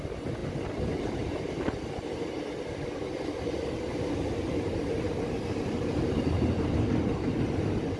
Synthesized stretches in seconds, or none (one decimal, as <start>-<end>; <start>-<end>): none